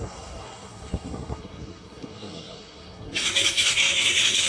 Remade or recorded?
remade